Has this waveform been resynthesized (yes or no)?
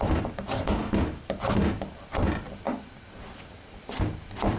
no